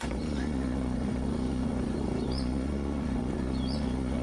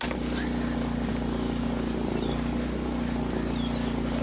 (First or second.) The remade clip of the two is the first